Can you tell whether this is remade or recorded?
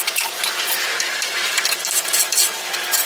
recorded